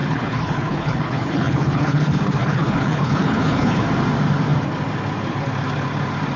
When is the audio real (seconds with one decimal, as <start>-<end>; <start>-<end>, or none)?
3.8-6.4